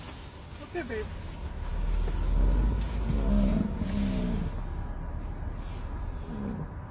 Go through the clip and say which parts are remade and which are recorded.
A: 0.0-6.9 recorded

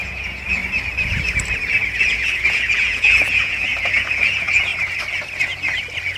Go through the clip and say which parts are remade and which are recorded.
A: 0.0-0.6 remade; 0.6-2.0 recorded; 2.0-4.7 remade; 4.7-6.2 recorded

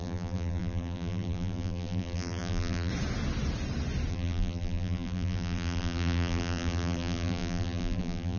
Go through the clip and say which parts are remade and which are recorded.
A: 0.0-2.9 remade; 2.9-4.1 recorded; 4.1-8.4 remade

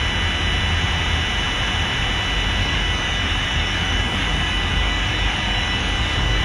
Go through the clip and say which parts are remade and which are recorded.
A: 0.0-2.6 recorded; 2.6-6.4 remade

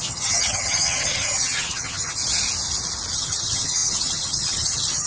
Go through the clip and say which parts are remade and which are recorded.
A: 0.0-2.2 remade; 2.2-3.1 recorded; 3.1-5.1 remade

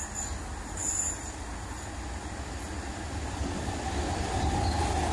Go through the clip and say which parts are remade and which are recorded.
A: 0.0-5.1 recorded

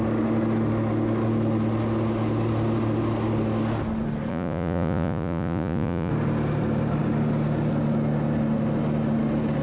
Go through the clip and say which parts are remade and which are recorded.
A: 0.0-4.3 recorded; 4.3-6.1 remade; 6.1-9.6 recorded

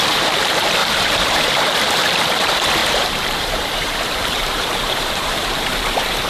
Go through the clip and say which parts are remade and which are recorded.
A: 0.0-0.8 recorded; 0.8-1.5 remade; 1.5-2.8 recorded; 2.8-6.3 remade